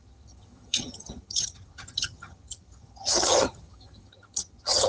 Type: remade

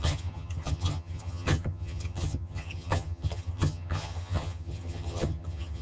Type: remade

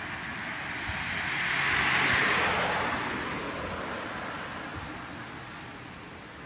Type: recorded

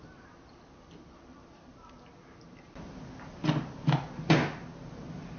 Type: recorded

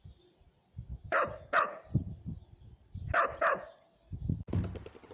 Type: recorded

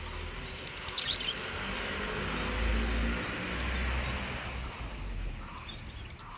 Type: recorded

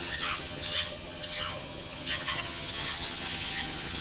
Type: remade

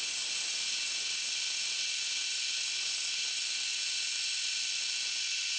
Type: recorded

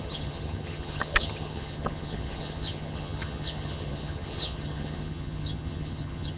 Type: remade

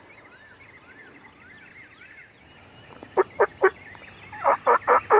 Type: recorded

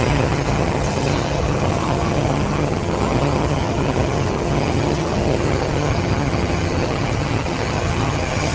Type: remade